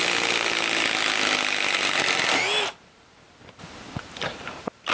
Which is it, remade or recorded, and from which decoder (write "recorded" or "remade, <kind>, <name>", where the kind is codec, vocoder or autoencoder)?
recorded